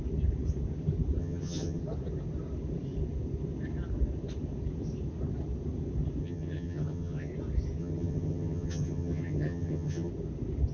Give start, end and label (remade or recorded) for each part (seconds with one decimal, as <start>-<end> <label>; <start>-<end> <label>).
0.0-1.2 recorded; 1.2-1.8 remade; 1.8-6.2 recorded; 6.2-7.3 remade; 7.3-7.8 recorded; 7.8-10.1 remade; 10.1-10.7 recorded